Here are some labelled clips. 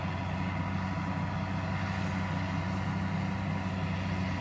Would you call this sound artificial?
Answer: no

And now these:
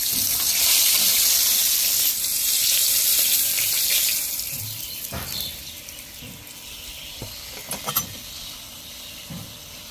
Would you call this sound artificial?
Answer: yes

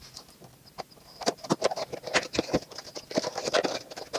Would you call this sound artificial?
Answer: no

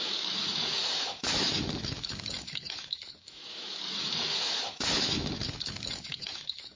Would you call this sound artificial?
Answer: yes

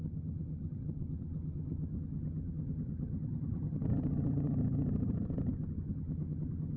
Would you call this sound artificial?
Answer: yes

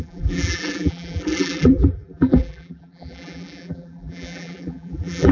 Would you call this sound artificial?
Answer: yes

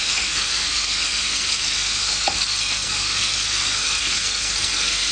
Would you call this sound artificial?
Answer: yes